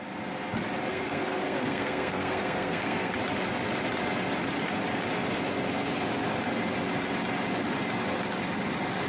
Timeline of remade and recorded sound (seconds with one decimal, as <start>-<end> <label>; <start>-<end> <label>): 0.0-0.9 recorded; 0.9-3.1 remade; 3.1-9.1 recorded